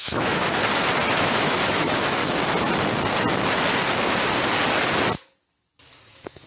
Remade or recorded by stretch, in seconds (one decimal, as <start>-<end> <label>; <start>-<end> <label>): 0.0-0.6 remade; 0.6-1.1 recorded; 1.1-2.2 remade; 2.2-6.1 recorded; 6.1-6.5 remade